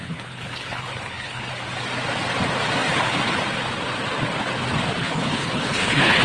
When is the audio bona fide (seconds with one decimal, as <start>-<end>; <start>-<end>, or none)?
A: 1.5-5.0

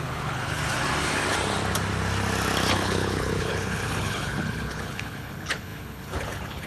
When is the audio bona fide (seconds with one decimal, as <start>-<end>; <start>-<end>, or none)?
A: 0.6-2.7